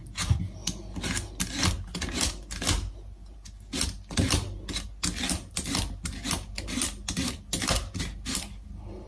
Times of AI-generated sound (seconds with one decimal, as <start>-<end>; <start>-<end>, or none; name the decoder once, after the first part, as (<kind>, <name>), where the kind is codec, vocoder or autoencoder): none